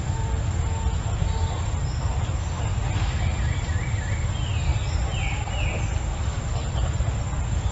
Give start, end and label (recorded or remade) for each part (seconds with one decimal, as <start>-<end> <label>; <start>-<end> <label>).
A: 0.0-7.7 recorded